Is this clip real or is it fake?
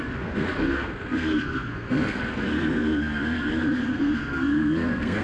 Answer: fake